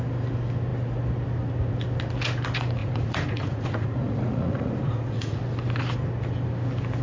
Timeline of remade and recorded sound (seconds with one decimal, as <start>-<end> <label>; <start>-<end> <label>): 0.0-2.8 recorded; 2.8-5.4 remade; 5.4-7.0 recorded